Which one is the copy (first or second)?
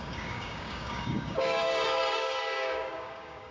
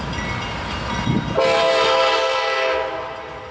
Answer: first